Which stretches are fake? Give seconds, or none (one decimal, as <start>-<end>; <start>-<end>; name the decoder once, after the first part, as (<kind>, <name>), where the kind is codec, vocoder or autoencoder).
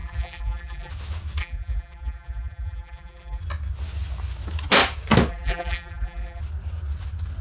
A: 0.0-0.9 (vocoder, BigVGAN v2); 1.4-3.4; 5.3-6.4